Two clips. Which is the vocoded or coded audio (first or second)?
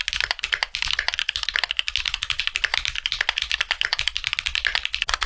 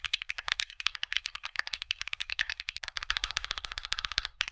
second